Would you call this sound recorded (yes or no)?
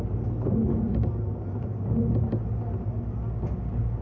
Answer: yes